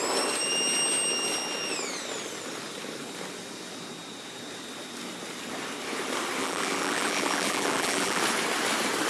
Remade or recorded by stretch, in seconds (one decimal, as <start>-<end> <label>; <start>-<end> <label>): 0.0-6.4 recorded; 6.4-8.2 remade; 8.2-9.1 recorded